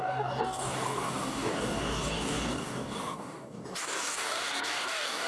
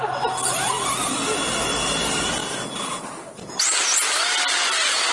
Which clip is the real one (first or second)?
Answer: second